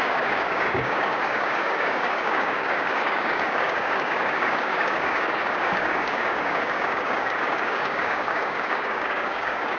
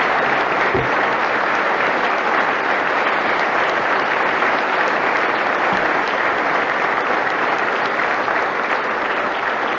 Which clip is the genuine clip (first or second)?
second